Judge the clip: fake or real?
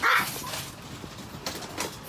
real